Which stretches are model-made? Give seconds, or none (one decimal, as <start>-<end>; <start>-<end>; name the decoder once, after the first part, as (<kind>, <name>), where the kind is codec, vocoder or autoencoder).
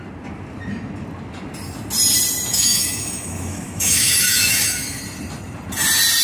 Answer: 2.5-5.0 (autoencoder, DAC-VAE)